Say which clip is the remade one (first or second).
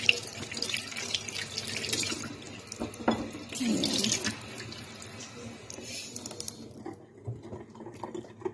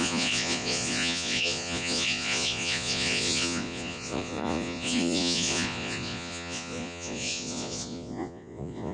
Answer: second